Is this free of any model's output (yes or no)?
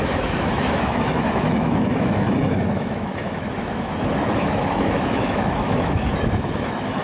no